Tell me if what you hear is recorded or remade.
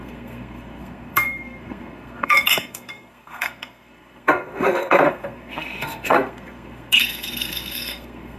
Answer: remade